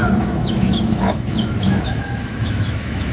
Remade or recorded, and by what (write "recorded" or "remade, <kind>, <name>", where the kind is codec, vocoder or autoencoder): remade, autoencoder, DAC-VAE